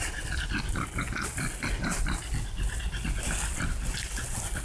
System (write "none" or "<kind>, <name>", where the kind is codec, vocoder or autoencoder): none